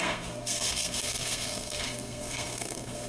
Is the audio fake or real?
fake